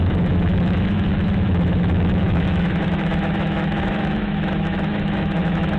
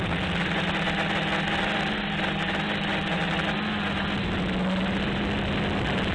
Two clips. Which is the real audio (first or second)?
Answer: second